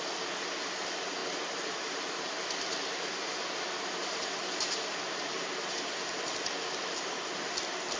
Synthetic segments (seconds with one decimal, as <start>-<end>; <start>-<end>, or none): 1.2-5.7

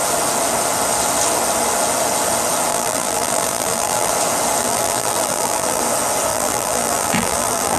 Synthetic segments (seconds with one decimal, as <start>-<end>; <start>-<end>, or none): 2.7-4.1; 4.6-5.8; 6.3-7.8

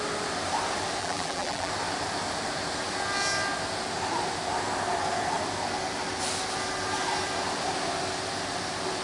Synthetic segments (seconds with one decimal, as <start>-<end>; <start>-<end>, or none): 1.0-1.7

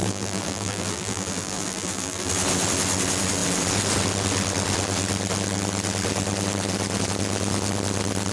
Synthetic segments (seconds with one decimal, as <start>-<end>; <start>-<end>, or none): 0.0-2.3

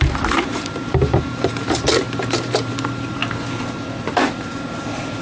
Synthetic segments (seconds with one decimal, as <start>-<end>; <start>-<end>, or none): 0.0-3.2; 4.0-5.2

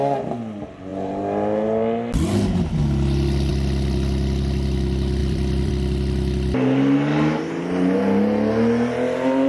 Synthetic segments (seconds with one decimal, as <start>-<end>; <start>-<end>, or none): 5.2-5.7